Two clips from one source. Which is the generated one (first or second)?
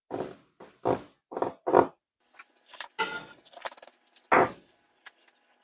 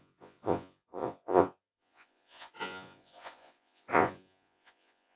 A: second